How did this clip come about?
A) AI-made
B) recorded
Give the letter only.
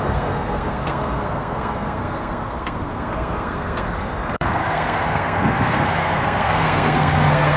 A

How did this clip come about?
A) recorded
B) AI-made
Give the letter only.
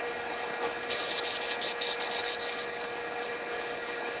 B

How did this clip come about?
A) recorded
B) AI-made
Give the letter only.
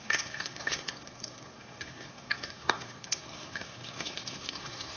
B